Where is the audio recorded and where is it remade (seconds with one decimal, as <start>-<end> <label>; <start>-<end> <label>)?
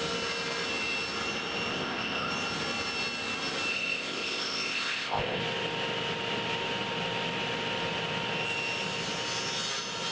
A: 0.0-1.7 recorded; 1.7-2.3 remade; 2.3-3.7 recorded; 3.7-5.4 remade; 5.4-10.1 recorded